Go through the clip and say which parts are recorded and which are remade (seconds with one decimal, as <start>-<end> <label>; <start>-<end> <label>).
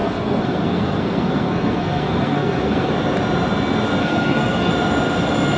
0.0-2.9 remade; 2.9-4.0 recorded; 4.0-4.7 remade; 4.7-5.6 recorded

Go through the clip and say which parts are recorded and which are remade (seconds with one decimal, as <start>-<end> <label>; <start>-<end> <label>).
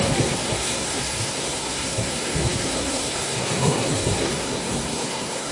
0.0-5.5 remade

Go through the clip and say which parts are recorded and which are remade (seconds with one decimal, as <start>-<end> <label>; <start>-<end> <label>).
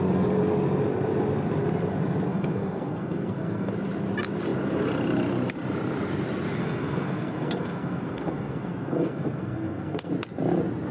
0.0-2.3 recorded; 2.3-3.7 remade; 3.7-6.6 recorded; 6.6-10.1 remade; 10.1-10.9 recorded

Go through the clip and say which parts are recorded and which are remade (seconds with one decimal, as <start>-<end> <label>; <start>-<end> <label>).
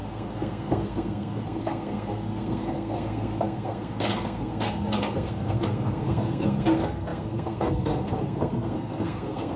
0.0-9.6 remade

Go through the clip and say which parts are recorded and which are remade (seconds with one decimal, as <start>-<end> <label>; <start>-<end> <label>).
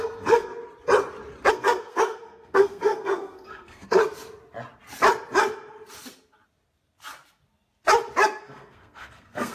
0.0-0.5 remade; 0.5-1.5 recorded; 1.5-4.0 remade; 4.0-8.4 recorded; 8.4-9.5 remade